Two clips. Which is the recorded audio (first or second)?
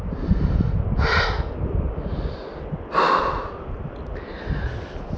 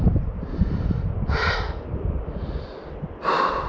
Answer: first